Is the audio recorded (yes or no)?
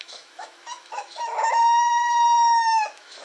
no